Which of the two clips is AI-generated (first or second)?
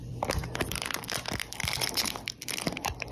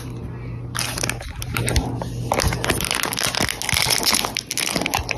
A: first